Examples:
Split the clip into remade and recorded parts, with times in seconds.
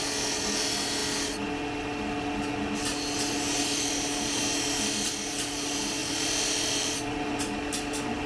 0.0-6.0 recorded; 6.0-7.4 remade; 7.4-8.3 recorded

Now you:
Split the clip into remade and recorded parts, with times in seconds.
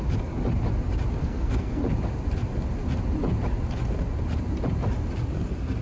0.0-1.2 recorded; 1.2-1.8 remade; 1.8-5.8 recorded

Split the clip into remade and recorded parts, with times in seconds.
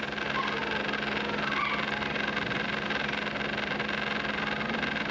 0.0-5.1 recorded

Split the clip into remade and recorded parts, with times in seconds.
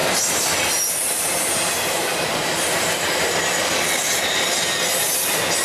0.0-3.4 remade; 3.4-5.6 recorded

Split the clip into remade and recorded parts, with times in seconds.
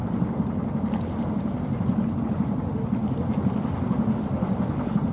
0.0-3.0 remade; 3.0-4.0 recorded; 4.0-5.1 remade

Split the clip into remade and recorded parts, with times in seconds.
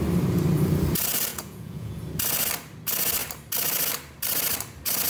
0.0-1.3 recorded; 1.3-2.0 remade; 2.0-5.1 recorded